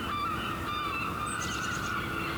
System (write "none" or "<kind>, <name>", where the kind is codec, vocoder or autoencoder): none